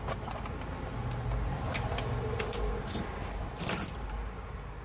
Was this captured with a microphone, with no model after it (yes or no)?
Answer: yes